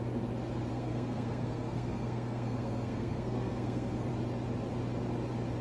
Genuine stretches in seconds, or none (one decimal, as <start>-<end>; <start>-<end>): 0.0-0.7; 4.1-5.6